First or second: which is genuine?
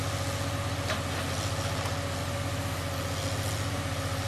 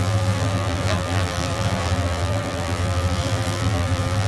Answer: first